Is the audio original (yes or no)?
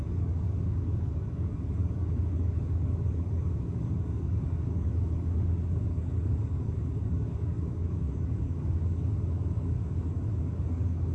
no